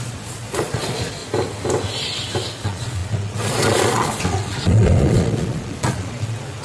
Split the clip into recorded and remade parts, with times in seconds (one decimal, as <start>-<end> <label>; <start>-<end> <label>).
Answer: 0.0-1.2 remade; 1.2-2.6 recorded; 2.6-6.6 remade